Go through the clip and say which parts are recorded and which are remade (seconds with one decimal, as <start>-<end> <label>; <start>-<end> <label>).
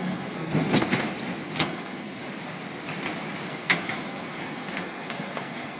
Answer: 0.0-0.5 remade; 0.5-1.6 recorded; 1.6-2.2 remade; 2.2-3.5 recorded; 3.5-5.8 remade